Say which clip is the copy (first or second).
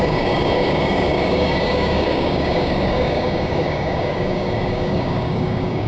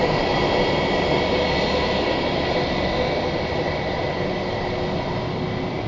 first